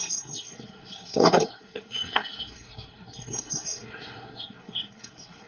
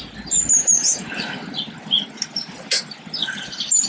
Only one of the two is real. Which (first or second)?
second